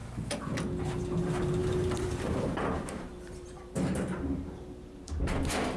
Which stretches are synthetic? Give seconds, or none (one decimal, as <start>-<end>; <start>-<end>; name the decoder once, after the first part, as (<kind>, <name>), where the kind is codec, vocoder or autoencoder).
1.6-5.1 (vocoder, BigVGAN v2)